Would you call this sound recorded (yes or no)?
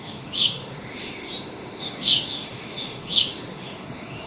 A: no